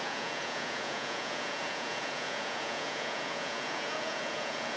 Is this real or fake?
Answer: fake